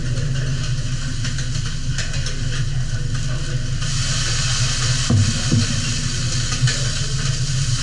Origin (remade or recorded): recorded